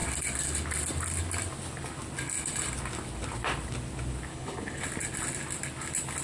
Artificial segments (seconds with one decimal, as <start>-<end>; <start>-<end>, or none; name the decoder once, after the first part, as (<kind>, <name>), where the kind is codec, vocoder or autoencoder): 4.3-4.8 (codec, HILCodec)